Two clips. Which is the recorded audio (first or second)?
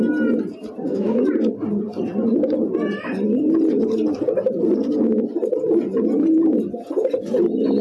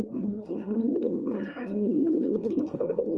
first